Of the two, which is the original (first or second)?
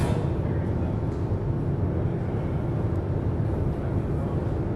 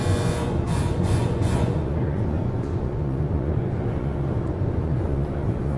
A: first